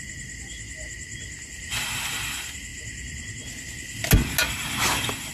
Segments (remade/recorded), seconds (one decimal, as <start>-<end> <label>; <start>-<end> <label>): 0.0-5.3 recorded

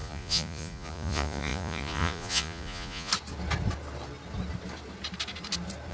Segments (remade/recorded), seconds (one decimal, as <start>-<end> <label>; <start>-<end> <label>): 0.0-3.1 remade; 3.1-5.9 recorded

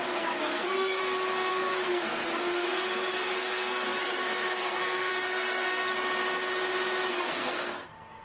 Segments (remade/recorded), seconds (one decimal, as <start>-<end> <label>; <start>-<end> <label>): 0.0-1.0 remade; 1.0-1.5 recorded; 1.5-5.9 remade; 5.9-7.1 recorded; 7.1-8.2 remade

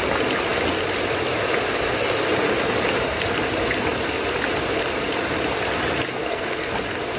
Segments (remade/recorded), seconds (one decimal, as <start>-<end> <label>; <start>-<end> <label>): 0.0-6.2 recorded; 6.2-6.7 remade; 6.7-7.2 recorded

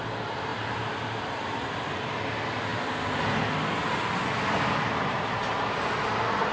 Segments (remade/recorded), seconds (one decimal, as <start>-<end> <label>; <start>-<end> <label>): 0.0-6.5 recorded

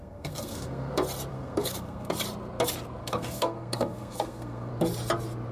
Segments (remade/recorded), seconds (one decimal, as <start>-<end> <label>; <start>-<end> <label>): 0.0-0.9 remade; 0.9-1.3 recorded; 1.3-2.1 remade; 2.1-3.0 recorded; 3.0-4.7 remade; 4.7-5.5 recorded